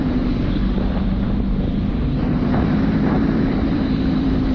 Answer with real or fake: fake